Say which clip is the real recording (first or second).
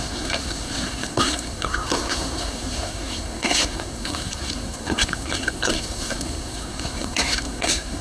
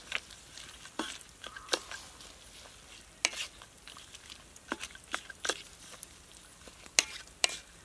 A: second